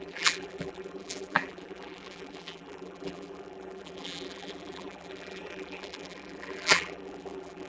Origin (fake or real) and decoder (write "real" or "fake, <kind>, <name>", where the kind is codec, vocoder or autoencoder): fake, vocoder, BigVGAN v2